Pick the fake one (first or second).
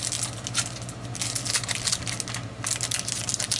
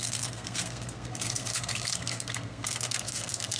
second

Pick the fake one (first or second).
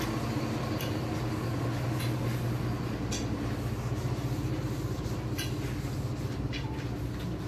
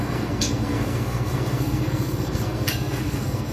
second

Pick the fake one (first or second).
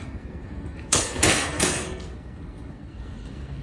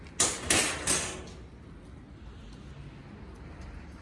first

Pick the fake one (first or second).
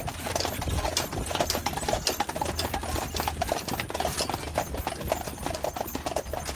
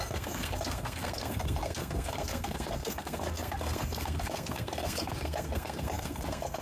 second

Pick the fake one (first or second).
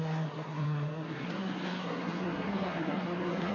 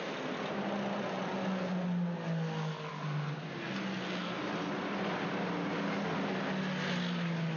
first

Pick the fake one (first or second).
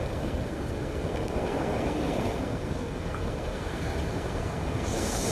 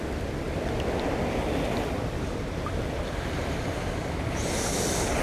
first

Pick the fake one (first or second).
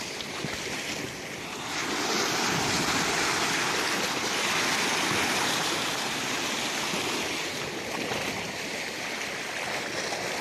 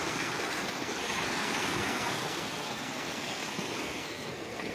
second